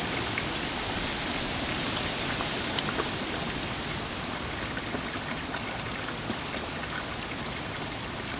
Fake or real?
real